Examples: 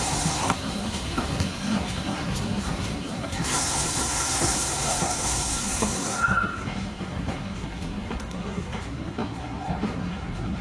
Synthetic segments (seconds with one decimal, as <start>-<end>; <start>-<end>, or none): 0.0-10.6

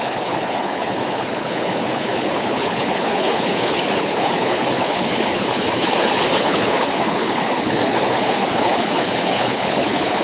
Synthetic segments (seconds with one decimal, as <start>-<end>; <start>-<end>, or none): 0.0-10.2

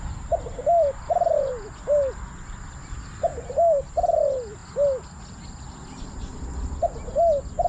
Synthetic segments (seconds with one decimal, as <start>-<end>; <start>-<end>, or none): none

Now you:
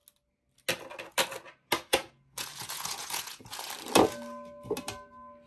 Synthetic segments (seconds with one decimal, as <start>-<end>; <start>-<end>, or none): 1.9-3.7

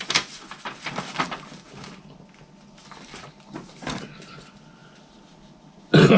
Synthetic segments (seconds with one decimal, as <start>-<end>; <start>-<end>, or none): none

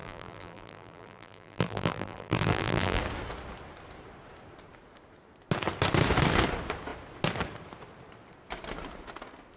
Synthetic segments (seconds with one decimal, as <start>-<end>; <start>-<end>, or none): 0.0-3.0